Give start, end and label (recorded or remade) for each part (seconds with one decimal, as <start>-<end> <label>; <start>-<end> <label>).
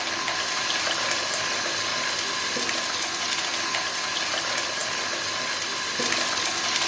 0.0-6.9 recorded